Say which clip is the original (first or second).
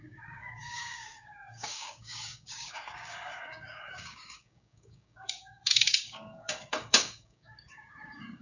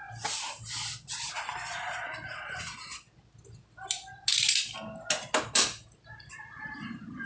second